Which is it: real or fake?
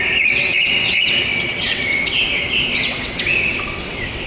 fake